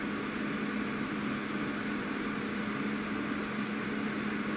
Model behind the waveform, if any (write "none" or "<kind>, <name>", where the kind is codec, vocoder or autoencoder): none